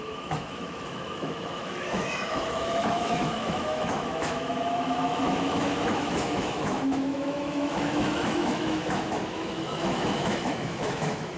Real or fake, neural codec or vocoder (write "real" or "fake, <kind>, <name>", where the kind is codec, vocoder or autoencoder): fake, autoencoder, DAC-VAE